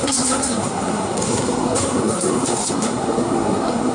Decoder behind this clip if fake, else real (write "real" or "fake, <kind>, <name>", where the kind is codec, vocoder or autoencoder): fake, codec, SNAC